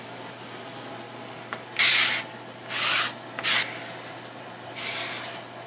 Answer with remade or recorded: recorded